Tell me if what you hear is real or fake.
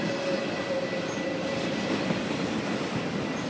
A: real